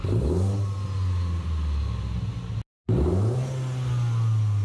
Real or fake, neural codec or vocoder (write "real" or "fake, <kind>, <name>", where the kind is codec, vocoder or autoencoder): real